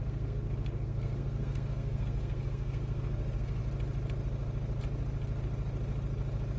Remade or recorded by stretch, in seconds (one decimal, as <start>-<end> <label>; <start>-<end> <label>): 0.0-3.6 remade; 3.6-6.6 recorded